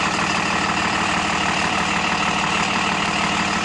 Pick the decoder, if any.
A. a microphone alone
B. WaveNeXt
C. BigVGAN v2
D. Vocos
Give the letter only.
C